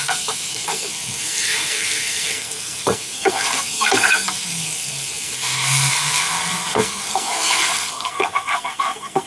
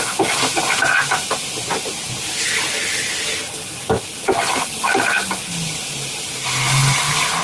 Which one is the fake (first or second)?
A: first